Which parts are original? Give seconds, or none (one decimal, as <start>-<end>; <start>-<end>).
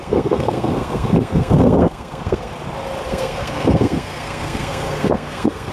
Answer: 2.5-3.0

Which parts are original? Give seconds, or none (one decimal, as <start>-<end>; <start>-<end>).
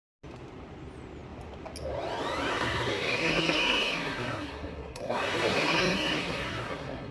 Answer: 0.0-2.5